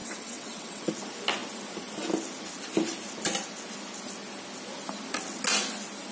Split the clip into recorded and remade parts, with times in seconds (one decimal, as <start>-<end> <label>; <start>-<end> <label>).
0.0-0.9 remade; 0.9-6.1 recorded